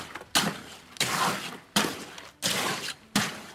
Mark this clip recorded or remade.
recorded